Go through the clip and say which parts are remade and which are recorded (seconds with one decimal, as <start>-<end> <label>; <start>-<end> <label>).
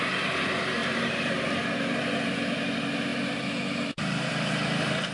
0.0-0.8 recorded; 0.8-2.6 remade; 2.6-5.1 recorded